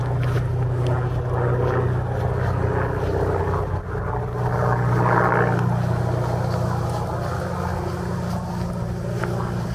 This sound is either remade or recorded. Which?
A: recorded